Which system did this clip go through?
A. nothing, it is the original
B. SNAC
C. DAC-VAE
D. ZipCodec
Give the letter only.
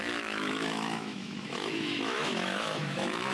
C